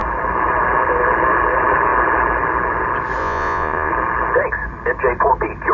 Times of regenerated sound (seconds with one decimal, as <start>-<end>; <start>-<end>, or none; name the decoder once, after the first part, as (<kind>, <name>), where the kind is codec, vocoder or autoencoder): 3.2-3.9 (vocoder, Vocos)